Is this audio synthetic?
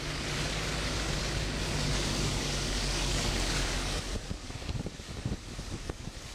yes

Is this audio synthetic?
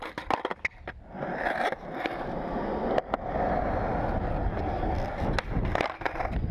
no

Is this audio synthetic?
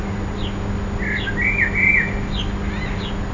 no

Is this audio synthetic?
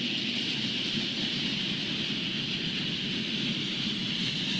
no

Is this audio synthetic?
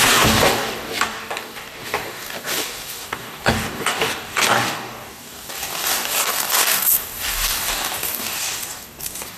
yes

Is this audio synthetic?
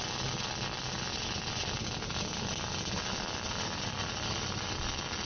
no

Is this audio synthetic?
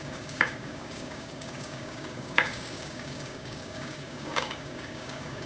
yes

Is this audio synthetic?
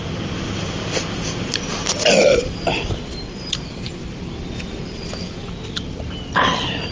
no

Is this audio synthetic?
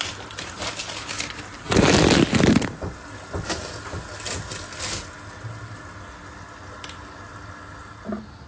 no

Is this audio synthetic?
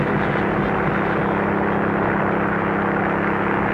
no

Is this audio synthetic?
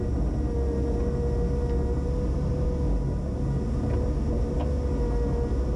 no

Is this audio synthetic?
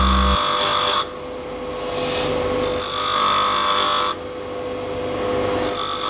no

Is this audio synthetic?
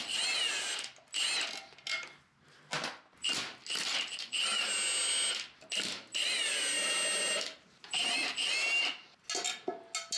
no